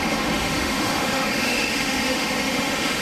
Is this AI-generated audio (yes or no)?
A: yes